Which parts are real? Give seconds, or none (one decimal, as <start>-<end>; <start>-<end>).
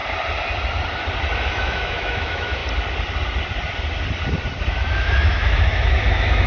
0.0-1.4; 2.6-4.7